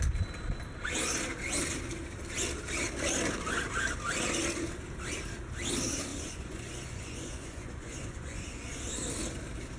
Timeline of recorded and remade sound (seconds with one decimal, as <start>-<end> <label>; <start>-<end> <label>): 0.0-6.1 recorded; 6.1-8.8 remade; 8.8-9.8 recorded